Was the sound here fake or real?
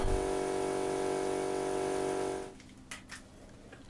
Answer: real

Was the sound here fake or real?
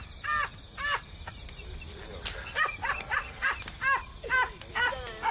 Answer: real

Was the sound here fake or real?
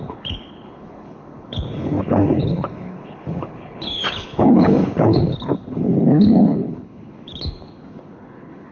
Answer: fake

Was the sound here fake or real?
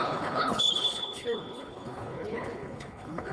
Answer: fake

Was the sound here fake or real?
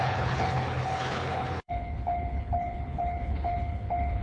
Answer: fake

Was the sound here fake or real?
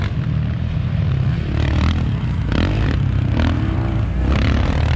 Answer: real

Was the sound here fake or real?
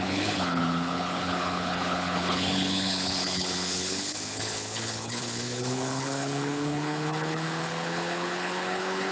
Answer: fake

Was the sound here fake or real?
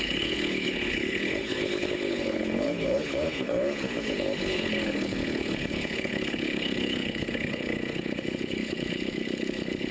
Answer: fake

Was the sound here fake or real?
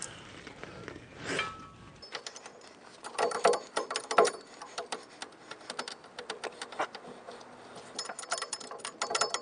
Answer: real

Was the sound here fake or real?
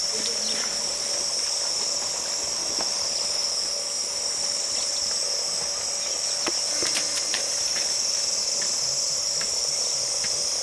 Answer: real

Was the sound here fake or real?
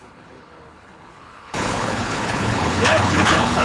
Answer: fake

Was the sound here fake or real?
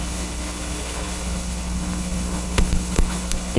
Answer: fake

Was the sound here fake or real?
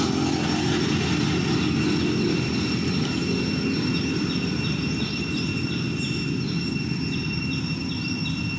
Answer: real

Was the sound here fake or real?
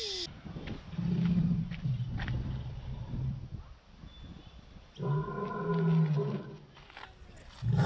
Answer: real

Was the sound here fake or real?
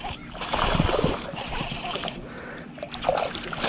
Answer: real